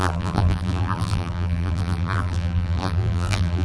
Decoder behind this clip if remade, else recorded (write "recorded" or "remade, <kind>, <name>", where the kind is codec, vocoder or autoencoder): remade, vocoder, BigVGAN v2